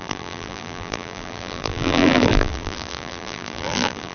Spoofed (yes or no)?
yes